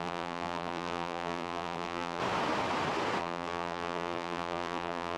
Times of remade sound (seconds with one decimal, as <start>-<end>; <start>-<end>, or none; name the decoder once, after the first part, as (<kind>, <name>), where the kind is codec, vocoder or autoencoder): 0.0-2.2 (vocoder, BigVGAN v2); 3.2-5.2